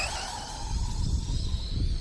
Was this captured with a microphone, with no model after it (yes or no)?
yes